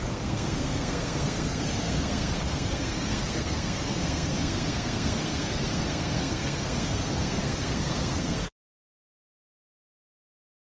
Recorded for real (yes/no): no